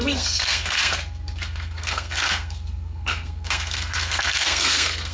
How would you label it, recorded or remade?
remade